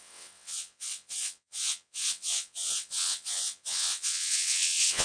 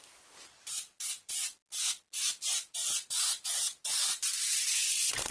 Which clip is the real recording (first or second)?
second